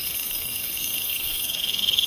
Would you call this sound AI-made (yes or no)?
yes